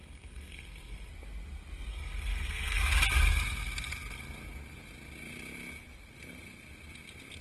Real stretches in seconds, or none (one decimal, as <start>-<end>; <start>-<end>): 1.1-1.9; 2.8-7.4

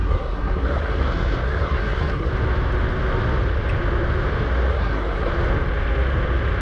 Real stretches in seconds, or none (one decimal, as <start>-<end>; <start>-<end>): 2.3-4.7; 5.3-6.6

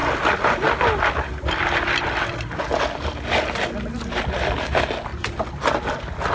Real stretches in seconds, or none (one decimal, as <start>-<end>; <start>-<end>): 0.0-6.3

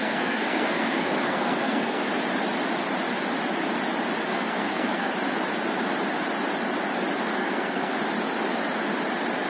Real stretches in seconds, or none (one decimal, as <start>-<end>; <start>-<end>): 2.1-4.3; 5.1-7.4; 7.9-9.5